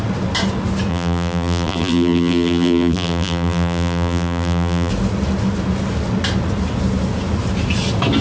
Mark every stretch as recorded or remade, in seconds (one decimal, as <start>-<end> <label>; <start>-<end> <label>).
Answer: 0.0-0.9 recorded; 0.9-4.9 remade; 4.9-8.2 recorded